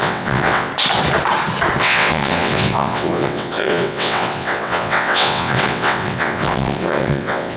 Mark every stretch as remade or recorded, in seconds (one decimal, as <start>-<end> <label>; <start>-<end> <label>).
0.0-0.7 remade; 0.7-1.8 recorded; 1.8-7.6 remade